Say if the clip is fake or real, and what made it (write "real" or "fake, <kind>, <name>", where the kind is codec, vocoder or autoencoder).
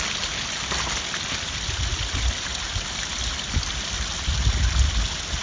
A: real